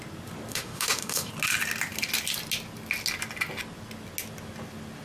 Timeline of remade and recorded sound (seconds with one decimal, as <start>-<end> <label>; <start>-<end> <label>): 0.0-0.5 recorded; 0.5-1.3 remade; 1.3-5.0 recorded

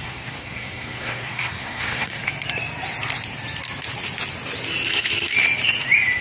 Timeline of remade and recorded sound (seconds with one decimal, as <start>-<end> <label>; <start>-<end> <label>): 0.0-2.2 remade; 2.2-6.2 recorded